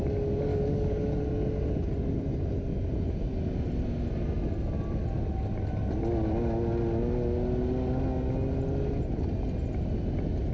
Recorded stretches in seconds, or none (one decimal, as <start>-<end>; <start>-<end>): 0.0-0.5; 1.2-10.5